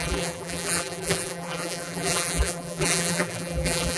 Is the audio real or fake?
fake